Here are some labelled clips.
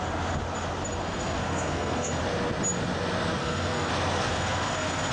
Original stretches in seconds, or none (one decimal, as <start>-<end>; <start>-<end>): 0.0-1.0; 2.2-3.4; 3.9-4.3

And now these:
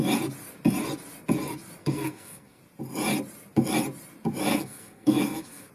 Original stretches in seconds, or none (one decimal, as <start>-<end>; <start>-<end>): 0.0-1.8; 2.6-4.5

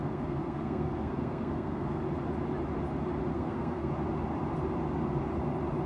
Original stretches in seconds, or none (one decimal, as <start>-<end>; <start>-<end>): 2.0-3.3; 3.9-5.9

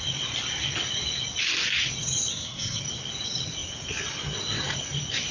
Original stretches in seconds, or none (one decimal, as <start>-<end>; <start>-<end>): 0.0-2.3; 2.8-5.3

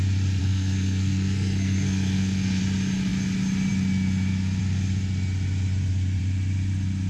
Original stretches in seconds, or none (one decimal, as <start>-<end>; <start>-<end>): 0.0-0.4; 2.6-7.1

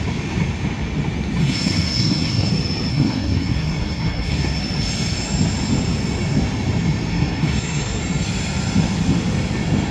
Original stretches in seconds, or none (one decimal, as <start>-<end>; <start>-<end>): 0.0-1.4; 2.5-2.9; 4.6-7.1; 8.0-9.9

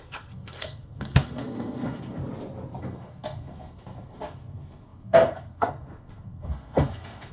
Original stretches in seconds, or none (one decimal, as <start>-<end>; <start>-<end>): 2.2-2.8